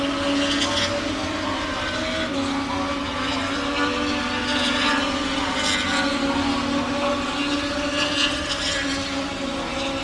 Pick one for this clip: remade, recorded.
recorded